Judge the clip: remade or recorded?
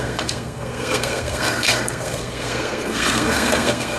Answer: remade